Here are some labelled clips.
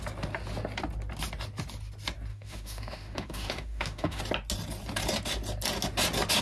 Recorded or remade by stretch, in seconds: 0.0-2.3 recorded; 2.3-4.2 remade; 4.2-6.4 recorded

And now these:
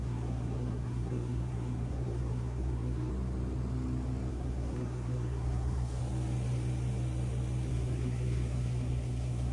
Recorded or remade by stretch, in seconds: 0.0-3.1 remade; 3.1-4.3 recorded; 4.3-6.0 remade; 6.0-7.7 recorded; 7.7-9.5 remade